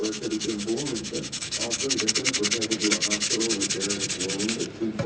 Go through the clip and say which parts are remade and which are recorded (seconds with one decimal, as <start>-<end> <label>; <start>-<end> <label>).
0.0-2.1 remade; 2.1-2.8 recorded; 2.8-3.3 remade; 3.3-5.1 recorded